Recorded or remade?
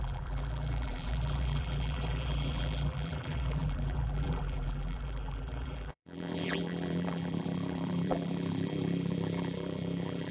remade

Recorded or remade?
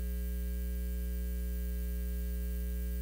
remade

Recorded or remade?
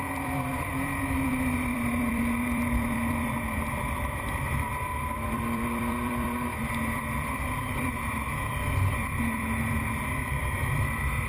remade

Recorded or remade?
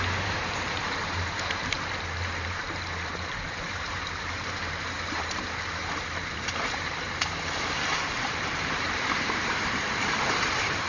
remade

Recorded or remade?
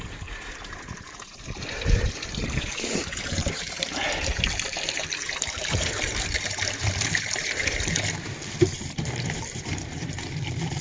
remade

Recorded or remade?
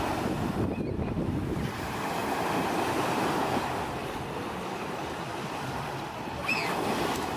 remade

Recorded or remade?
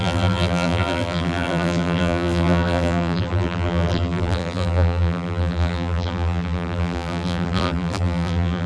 remade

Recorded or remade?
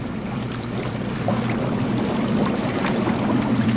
remade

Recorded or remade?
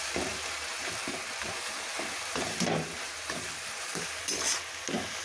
remade